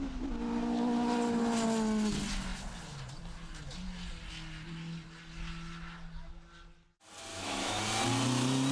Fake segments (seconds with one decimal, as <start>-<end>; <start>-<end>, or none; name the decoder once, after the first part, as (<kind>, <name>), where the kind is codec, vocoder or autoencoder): 7.3-7.8 (autoencoder, DAC-VAE)